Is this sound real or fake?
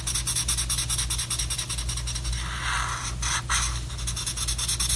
real